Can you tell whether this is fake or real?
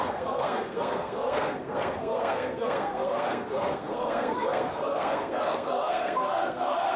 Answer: fake